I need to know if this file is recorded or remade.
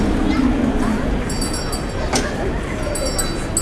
recorded